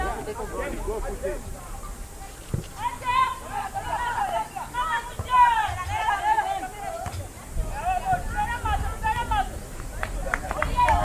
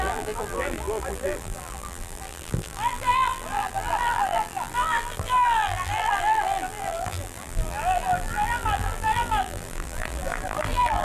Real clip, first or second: first